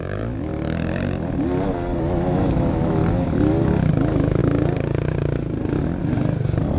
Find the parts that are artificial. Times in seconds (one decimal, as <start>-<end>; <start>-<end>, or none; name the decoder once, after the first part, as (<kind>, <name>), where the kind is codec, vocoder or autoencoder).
0.0-0.5 (autoencoder, DAC-VAE); 2.0-3.0; 3.9-4.4